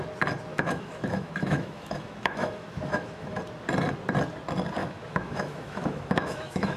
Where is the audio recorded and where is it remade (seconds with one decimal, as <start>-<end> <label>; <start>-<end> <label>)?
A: 0.0-0.5 recorded; 0.5-3.4 remade; 3.4-4.8 recorded; 4.8-6.8 remade